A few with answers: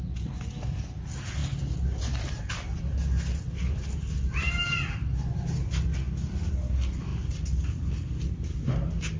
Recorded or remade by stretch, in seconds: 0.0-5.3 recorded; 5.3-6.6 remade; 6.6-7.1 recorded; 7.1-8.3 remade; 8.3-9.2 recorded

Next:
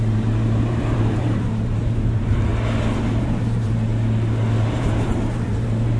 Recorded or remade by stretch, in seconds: 0.0-2.5 remade; 2.5-3.2 recorded; 3.2-3.9 remade; 3.9-4.6 recorded; 4.6-6.0 remade

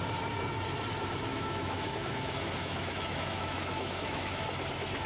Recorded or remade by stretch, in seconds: 0.0-1.3 recorded; 1.3-4.4 remade; 4.4-5.1 recorded

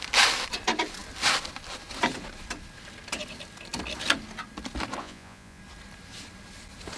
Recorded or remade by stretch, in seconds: 0.0-5.0 recorded; 5.0-5.6 remade; 5.6-7.0 recorded

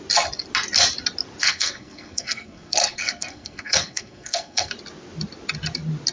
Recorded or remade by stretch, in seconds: 0.0-1.4 recorded; 1.4-4.7 remade; 4.7-6.1 recorded

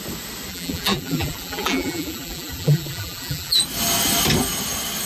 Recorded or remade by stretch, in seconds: 0.0-0.5 recorded; 0.5-3.6 remade; 3.6-5.1 recorded